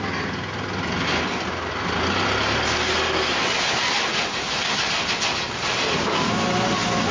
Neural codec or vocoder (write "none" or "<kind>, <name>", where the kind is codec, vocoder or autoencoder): none